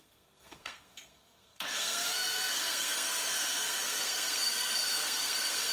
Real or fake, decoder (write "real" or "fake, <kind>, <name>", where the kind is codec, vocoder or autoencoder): fake, codec, SNAC